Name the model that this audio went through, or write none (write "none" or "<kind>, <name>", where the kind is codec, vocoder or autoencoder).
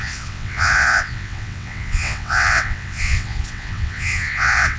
vocoder, WaveNeXt